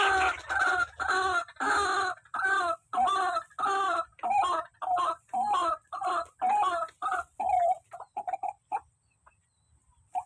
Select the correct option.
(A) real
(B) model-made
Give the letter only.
A